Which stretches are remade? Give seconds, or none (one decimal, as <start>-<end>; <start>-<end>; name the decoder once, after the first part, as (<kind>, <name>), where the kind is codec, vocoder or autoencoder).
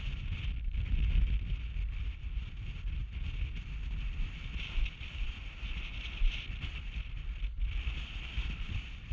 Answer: none